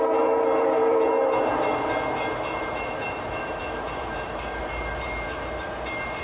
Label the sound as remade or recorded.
remade